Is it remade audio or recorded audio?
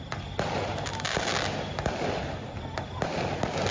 recorded